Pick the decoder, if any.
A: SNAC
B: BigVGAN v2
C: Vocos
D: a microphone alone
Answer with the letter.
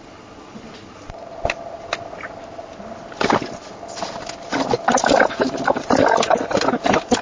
B